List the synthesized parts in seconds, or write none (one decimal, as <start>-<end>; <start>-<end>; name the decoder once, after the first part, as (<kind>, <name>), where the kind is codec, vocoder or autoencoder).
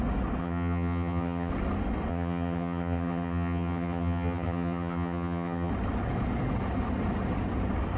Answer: 0.4-1.5 (vocoder, HiFi-GAN); 2.1-5.7